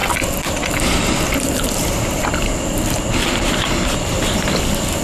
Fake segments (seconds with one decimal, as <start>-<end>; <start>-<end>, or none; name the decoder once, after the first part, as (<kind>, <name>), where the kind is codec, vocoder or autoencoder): none